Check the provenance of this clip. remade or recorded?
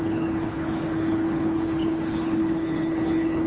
remade